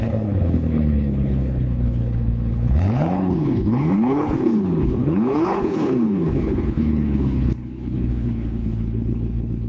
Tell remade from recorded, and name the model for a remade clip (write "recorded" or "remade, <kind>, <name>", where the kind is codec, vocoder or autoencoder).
remade, codec, HILCodec